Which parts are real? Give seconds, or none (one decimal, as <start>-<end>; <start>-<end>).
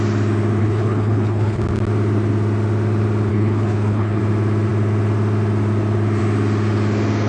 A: 0.0-0.6; 1.6-3.3; 4.2-7.3